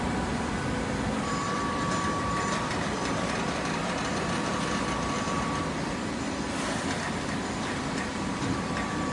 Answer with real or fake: fake